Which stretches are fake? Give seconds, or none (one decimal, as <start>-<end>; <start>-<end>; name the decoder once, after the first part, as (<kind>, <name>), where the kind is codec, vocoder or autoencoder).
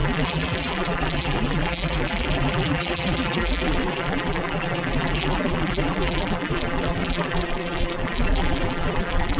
0.0-9.4 (vocoder, BigVGAN v2)